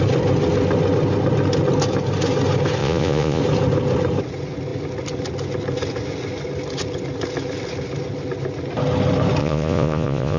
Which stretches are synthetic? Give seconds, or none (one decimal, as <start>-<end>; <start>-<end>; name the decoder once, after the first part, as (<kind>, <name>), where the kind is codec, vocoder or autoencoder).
2.8-3.4 (vocoder, Vocos); 9.4-10.4